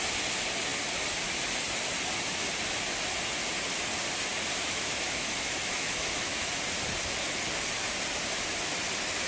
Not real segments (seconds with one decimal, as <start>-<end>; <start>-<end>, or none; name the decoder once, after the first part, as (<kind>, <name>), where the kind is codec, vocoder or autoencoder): 4.5-6.5 (autoencoder, DAC-VAE)